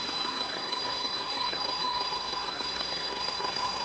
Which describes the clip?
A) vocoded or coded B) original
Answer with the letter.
A